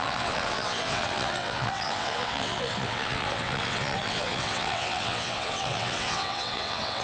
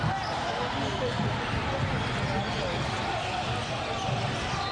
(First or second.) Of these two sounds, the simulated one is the first